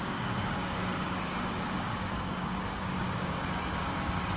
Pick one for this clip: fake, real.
fake